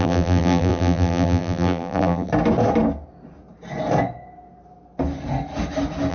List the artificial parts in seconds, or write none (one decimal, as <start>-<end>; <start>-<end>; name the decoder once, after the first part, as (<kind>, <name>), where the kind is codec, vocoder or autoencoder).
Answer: 0.0-2.3 (vocoder, BigVGAN v2)